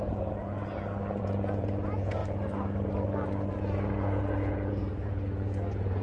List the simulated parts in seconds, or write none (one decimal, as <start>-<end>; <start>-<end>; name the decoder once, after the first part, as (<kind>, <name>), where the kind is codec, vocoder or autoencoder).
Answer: 0.0-0.5 (vocoder, Vocos); 1.2-2.2; 3.5-6.0